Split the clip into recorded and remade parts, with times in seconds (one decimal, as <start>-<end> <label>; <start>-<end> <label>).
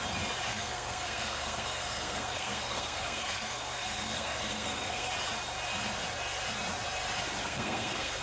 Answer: 0.0-0.5 recorded; 0.5-5.1 remade; 5.1-7.4 recorded; 7.4-8.2 remade